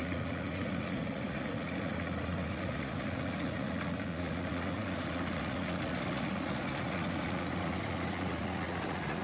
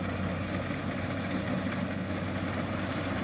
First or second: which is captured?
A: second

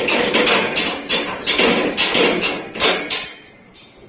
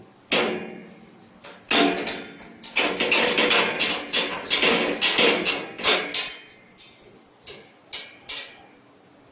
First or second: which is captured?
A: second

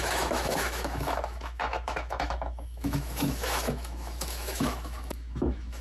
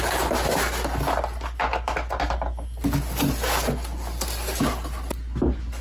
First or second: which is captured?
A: second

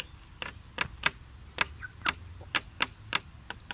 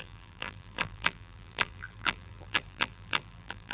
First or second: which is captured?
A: first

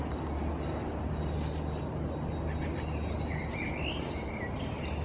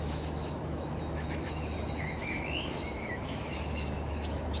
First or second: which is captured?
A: first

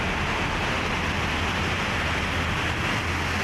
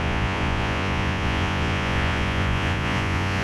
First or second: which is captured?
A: first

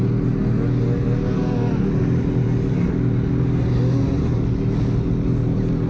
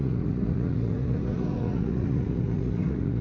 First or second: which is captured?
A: first